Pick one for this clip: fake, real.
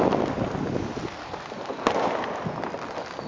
real